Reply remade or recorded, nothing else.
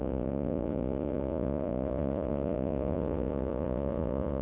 remade